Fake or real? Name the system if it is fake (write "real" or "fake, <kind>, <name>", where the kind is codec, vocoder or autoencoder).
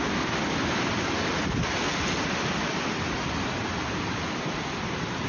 real